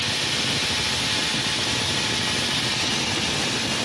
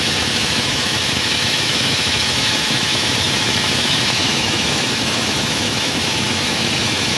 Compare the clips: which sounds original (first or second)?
first